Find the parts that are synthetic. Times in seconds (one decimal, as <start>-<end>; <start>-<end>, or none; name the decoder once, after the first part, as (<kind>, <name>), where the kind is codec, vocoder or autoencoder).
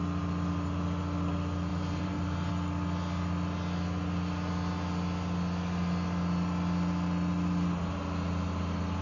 1.7-2.5 (vocoder, BigVGAN v2)